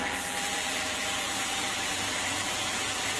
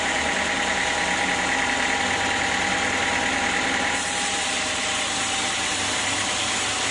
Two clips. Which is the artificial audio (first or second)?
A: first